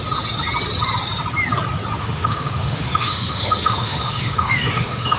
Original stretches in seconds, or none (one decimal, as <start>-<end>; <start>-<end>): 0.0-2.0